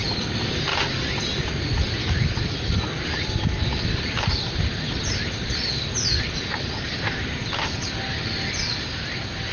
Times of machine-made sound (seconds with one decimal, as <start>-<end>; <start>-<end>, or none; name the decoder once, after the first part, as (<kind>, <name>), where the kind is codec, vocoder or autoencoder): none